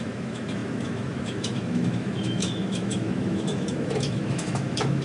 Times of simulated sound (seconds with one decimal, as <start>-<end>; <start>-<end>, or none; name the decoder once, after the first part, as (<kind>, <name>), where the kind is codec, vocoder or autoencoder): 0.0-5.0 (autoencoder, DAC-VAE)